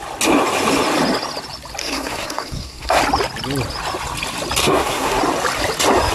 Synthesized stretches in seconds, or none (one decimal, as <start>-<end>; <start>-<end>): 1.8-3.0; 4.6-5.2